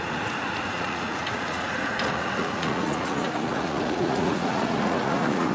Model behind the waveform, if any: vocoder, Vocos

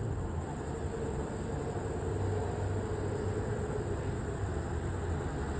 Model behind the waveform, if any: none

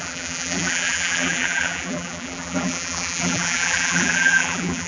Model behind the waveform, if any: vocoder, BigVGAN v2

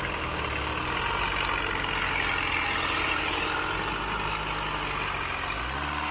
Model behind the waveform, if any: none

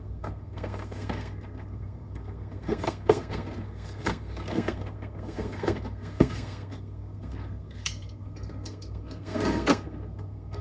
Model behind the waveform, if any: codec, SNAC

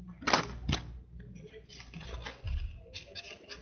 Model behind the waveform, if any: none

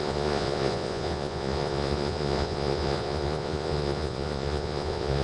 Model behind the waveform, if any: vocoder, Vocos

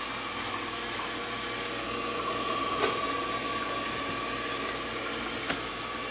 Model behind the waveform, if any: none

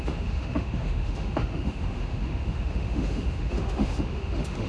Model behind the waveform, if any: autoencoder, DAC-VAE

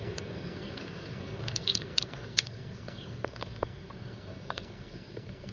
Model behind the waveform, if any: codec, SNAC